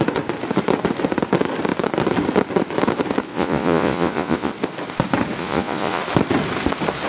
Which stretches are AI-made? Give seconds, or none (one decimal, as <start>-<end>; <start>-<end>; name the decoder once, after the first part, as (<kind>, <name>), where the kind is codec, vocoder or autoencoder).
3.3-4.5 (vocoder, Vocos); 5.4-6.0